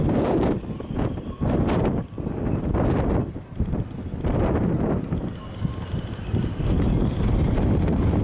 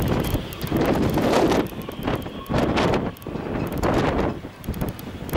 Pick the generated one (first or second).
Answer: second